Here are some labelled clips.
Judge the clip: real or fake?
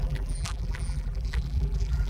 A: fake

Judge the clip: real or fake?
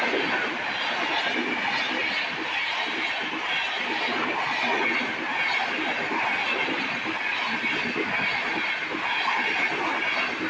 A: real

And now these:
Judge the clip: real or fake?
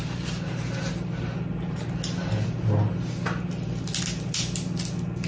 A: real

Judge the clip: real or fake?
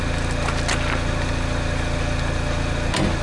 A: real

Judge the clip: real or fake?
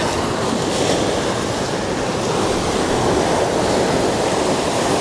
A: real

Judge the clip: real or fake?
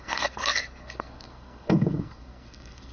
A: fake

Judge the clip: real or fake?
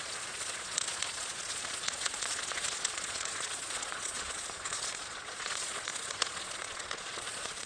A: fake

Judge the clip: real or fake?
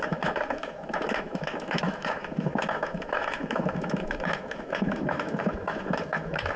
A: fake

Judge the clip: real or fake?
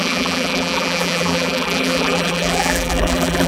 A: fake